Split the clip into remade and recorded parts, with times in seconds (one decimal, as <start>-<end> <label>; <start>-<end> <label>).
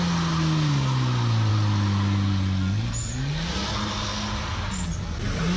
0.0-5.6 recorded